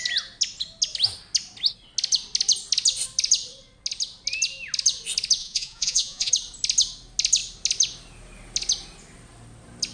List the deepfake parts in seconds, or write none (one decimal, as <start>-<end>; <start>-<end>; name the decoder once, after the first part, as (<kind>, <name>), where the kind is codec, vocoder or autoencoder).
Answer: 5.4-6.3 (vocoder, Vocos)